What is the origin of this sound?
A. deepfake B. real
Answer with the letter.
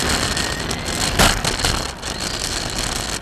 B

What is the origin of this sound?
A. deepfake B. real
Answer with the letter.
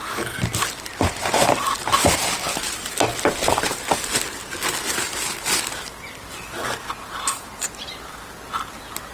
B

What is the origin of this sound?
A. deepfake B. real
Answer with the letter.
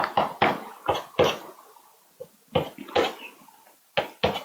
B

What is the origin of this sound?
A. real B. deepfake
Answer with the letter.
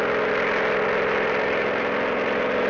A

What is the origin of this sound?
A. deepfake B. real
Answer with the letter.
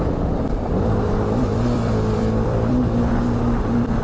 A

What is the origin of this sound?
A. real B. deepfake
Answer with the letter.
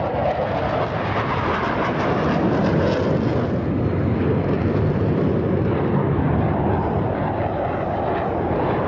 A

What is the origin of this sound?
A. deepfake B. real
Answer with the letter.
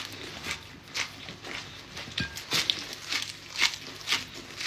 B